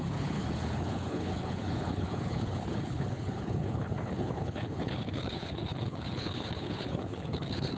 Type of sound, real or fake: fake